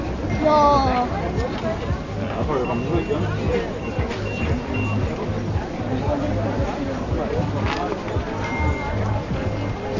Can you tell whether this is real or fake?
real